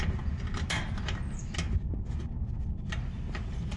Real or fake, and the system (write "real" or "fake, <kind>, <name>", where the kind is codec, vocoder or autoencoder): real